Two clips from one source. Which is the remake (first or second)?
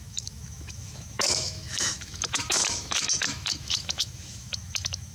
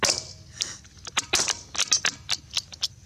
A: first